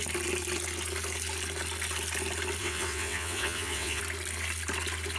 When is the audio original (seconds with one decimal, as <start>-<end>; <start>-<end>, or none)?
0.0-2.6; 4.0-5.2